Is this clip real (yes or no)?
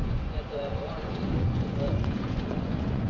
no